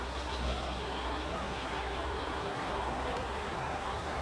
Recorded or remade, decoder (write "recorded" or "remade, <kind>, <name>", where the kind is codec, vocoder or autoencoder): remade, codec, SNAC